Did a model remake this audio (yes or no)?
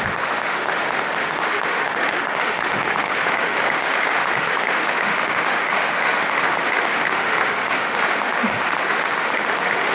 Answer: yes